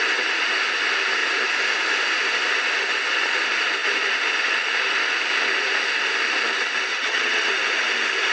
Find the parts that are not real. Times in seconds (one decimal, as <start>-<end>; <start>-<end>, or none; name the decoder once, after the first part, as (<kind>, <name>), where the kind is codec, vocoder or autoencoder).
6.9-7.5 (vocoder, HiFi-GAN)